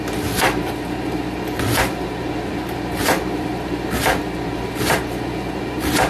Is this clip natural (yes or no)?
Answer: yes